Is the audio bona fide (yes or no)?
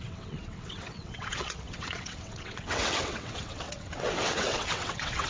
no